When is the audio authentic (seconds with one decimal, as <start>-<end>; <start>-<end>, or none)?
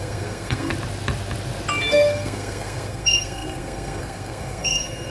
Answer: 0.7-1.9